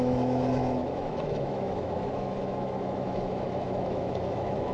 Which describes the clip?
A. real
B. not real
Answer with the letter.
B